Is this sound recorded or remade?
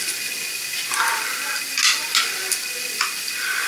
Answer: recorded